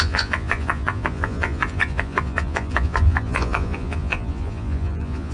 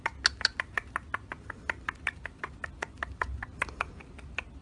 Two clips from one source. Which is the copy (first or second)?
first